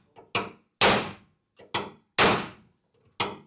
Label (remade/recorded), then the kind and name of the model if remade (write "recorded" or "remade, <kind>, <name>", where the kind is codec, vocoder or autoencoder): recorded